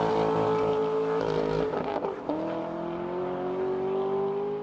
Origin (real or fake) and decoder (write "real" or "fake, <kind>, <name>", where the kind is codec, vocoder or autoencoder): real